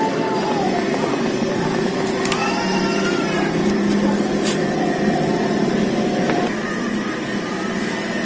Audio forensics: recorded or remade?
remade